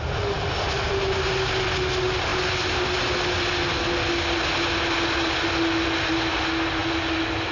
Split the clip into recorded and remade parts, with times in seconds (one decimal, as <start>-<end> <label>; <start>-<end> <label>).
0.0-7.5 recorded